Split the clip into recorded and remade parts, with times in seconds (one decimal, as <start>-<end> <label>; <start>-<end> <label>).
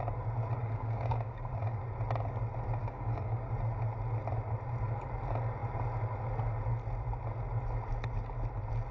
0.0-0.6 recorded; 0.6-1.8 remade; 1.8-2.8 recorded; 2.8-3.5 remade; 3.5-8.9 recorded